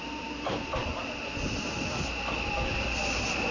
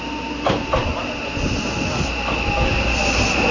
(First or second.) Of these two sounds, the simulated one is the first